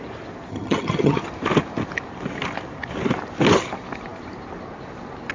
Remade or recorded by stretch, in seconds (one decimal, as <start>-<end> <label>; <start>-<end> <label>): 0.0-0.5 recorded; 0.5-1.2 remade; 1.2-5.3 recorded